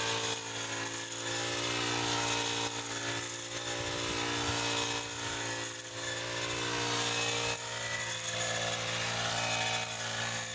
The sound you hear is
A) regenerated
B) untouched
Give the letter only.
B